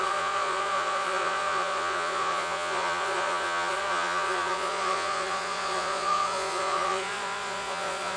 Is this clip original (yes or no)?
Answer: no